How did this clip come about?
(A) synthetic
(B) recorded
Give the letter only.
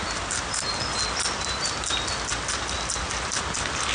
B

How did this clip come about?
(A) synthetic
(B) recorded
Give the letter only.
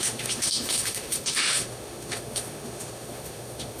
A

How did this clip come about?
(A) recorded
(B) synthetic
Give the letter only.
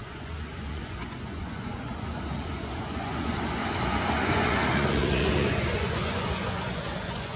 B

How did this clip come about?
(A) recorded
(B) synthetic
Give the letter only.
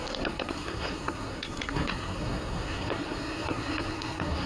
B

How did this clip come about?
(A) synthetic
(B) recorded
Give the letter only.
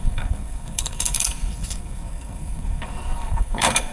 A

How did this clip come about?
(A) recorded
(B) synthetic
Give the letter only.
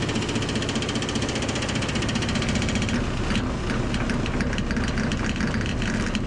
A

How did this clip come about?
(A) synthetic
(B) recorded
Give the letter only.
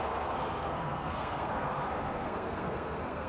A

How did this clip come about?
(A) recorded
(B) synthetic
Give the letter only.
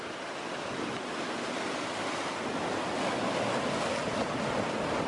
A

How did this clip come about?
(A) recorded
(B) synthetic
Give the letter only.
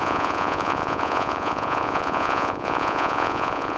B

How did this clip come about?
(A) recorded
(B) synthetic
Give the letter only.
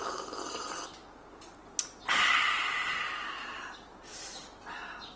A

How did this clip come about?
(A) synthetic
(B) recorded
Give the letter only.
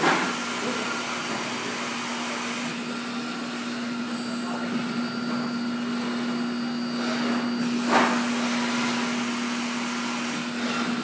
B